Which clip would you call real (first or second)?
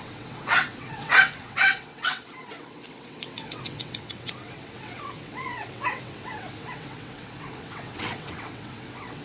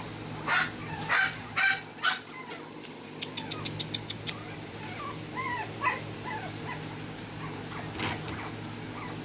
second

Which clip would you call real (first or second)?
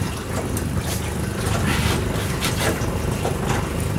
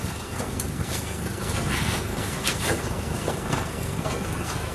first